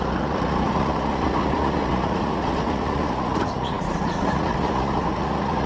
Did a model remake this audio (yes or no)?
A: yes